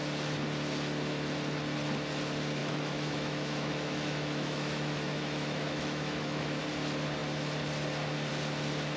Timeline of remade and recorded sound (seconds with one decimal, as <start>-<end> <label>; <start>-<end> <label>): 0.0-2.6 recorded; 2.6-6.6 remade; 6.6-9.0 recorded